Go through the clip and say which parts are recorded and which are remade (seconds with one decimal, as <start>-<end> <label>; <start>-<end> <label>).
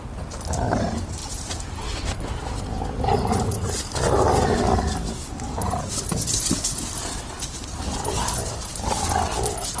0.0-9.8 recorded